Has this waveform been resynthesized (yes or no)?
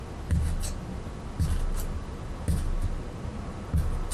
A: no